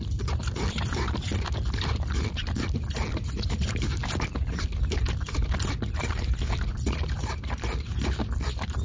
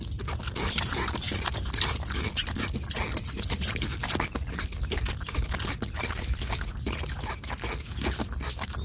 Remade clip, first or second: first